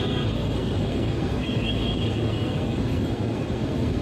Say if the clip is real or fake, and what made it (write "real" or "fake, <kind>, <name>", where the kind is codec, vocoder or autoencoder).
fake, codec, SNAC